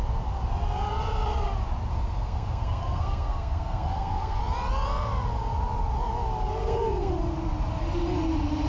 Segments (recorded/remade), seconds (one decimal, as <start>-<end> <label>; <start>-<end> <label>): 0.0-1.9 recorded; 1.9-4.4 remade; 4.4-6.6 recorded; 6.6-7.1 remade; 7.1-8.7 recorded

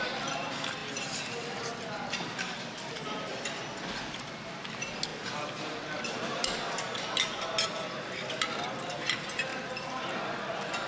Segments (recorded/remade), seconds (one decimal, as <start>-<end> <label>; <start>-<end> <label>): 0.0-10.9 recorded